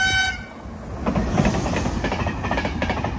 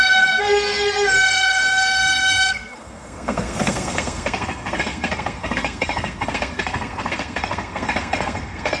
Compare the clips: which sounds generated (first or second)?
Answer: second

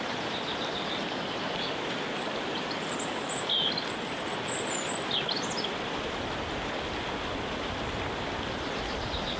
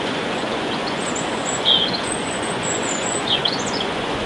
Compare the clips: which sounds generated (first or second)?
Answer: second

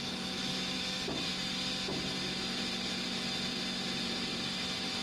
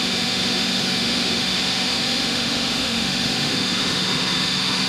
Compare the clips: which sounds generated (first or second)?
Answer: second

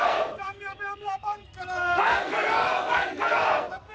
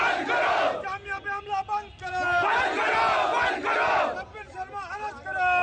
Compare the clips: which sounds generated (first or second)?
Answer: first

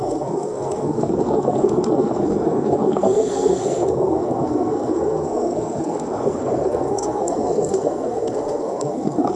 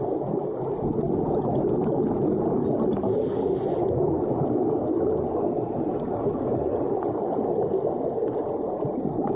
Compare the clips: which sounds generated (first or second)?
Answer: first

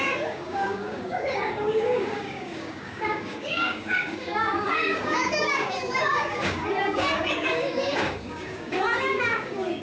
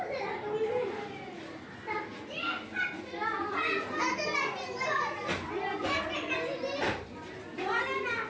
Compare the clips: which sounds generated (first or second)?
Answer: first